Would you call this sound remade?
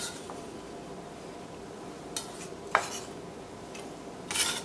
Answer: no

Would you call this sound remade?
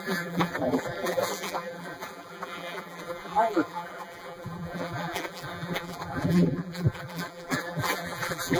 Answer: yes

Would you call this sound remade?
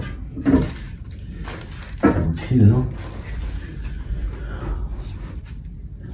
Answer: no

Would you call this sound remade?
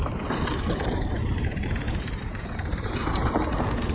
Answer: yes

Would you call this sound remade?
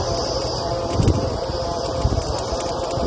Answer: no